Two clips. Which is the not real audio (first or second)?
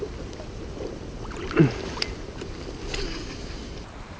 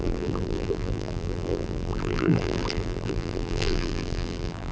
second